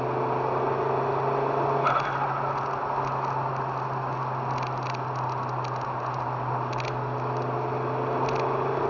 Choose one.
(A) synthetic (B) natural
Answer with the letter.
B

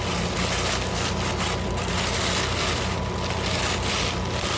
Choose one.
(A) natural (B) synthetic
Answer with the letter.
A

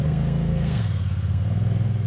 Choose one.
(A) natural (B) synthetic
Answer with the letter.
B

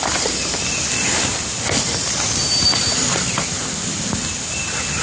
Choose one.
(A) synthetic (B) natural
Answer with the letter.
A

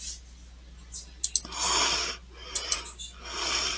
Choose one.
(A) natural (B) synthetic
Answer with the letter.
A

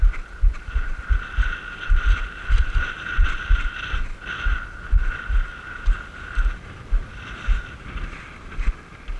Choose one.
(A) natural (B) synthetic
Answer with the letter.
A